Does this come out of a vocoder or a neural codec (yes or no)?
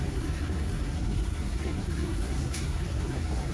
yes